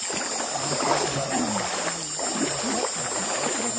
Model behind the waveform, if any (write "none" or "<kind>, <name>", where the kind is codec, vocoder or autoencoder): none